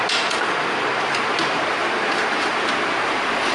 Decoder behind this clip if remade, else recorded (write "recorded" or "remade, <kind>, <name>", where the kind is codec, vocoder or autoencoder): recorded